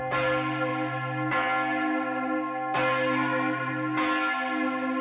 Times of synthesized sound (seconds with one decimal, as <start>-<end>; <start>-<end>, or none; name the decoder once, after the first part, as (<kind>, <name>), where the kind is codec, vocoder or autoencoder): none